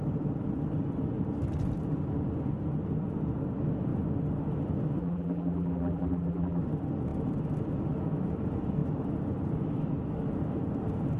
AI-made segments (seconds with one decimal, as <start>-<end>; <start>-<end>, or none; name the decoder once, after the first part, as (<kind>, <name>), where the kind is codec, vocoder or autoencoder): 5.0-6.6 (vocoder, BigVGAN v2)